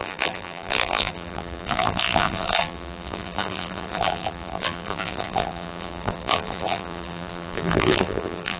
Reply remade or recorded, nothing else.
remade